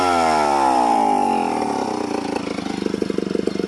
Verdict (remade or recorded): recorded